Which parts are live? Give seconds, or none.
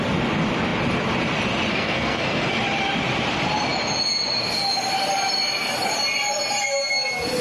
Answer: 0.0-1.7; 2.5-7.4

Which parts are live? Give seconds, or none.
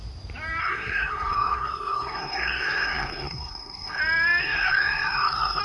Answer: 0.0-0.6; 4.0-4.4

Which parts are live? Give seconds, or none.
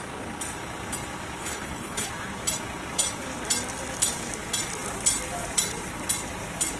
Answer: 0.0-1.4; 2.1-6.8